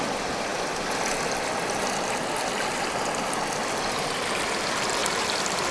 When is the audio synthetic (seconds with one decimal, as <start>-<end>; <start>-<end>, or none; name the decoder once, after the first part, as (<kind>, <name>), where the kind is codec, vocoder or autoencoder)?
0.0-0.5 (vocoder, BigVGAN v2); 3.9-5.7